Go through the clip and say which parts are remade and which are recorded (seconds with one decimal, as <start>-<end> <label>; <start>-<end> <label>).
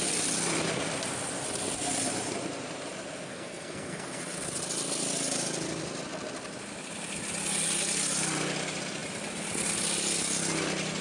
0.0-3.3 recorded; 3.3-4.2 remade; 4.2-11.0 recorded